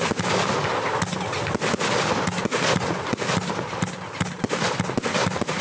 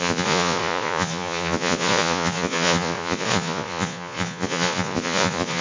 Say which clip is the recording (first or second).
first